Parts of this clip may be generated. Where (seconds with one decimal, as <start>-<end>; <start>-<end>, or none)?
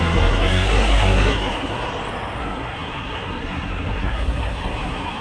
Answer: 0.0-1.9; 2.4-5.2